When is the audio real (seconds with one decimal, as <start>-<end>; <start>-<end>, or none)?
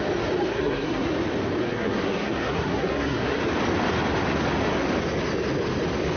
0.0-0.5; 1.1-1.6; 3.4-6.2